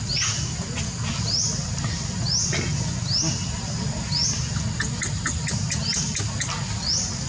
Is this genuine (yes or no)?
yes